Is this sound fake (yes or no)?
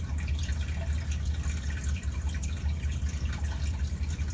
no